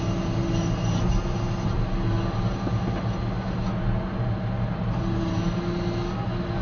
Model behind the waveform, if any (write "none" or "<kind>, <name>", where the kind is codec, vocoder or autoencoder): none